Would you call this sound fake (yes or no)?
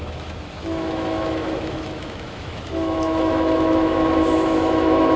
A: yes